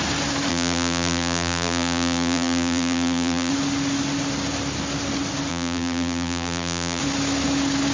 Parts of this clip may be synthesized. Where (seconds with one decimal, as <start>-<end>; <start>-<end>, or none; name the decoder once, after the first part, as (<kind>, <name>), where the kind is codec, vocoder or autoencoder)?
0.5-3.5 (vocoder, BigVGAN v2); 5.5-7.0